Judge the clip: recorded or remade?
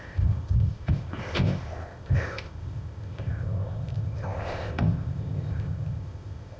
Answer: remade